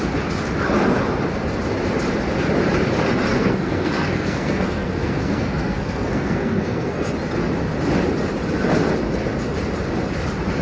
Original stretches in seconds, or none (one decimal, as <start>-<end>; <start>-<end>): 0.0-3.3; 7.1-10.6